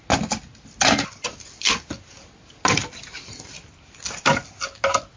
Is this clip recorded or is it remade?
recorded